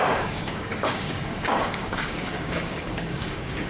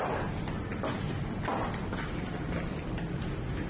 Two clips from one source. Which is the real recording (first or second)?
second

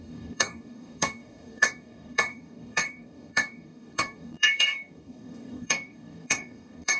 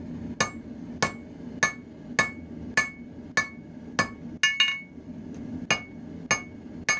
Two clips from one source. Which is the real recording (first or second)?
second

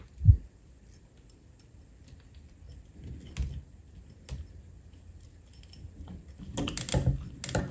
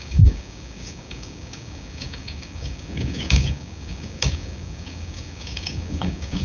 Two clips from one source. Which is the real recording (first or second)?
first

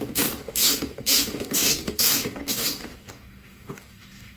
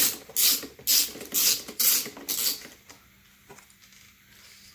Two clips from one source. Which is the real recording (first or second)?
second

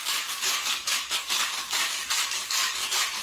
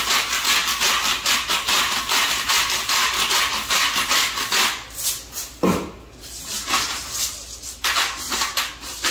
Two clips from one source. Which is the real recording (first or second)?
second